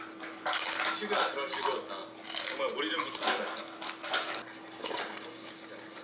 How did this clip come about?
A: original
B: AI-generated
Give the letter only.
A